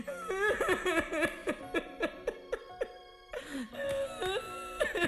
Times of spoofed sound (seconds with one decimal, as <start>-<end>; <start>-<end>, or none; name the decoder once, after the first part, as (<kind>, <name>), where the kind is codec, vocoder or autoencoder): none